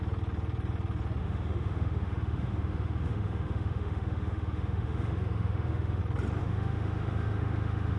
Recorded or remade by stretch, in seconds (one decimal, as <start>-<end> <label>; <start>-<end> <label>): 0.0-1.2 recorded; 1.2-6.0 remade; 6.0-6.4 recorded; 6.4-8.0 remade